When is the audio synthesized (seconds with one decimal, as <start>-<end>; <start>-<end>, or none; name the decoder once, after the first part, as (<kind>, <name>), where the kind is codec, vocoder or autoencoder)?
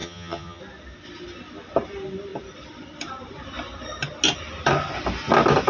0.0-0.6 (vocoder, HiFi-GAN)